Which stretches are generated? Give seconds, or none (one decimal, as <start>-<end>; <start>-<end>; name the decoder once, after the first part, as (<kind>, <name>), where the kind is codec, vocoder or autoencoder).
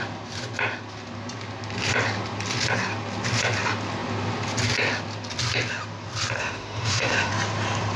6.4-7.3 (autoencoder, DAC-VAE)